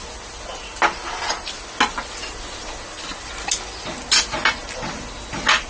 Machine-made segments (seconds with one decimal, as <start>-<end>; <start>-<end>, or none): none